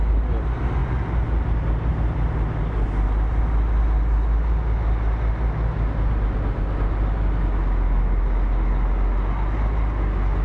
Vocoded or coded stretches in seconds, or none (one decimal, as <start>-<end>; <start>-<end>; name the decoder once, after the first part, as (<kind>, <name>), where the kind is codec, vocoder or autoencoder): none